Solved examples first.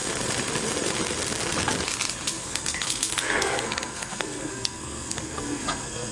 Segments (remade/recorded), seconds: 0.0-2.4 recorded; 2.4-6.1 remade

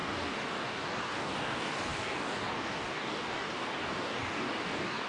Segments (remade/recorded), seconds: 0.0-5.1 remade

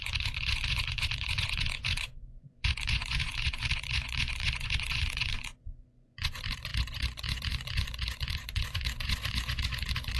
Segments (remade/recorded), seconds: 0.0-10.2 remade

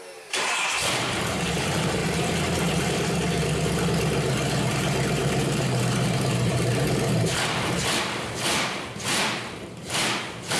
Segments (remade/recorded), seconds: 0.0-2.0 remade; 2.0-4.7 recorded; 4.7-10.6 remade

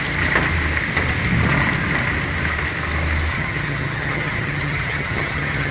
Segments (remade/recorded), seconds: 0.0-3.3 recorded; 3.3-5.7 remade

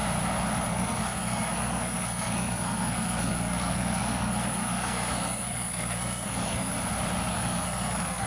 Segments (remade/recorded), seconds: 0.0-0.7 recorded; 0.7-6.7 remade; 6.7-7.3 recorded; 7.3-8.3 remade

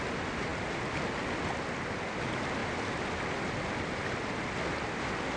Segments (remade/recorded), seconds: 0.0-5.4 recorded

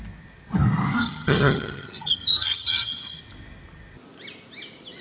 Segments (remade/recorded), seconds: 0.0-1.0 recorded; 1.0-3.2 remade; 3.2-5.0 recorded